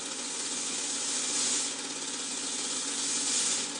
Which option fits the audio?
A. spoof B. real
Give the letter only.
A